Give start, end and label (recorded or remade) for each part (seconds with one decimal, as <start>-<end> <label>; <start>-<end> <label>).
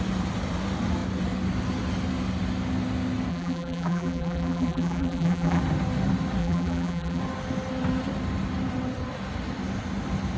0.0-3.3 recorded; 3.3-5.6 remade; 5.6-6.4 recorded; 6.4-7.2 remade; 7.2-10.4 recorded